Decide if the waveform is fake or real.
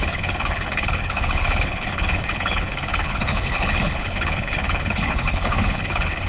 fake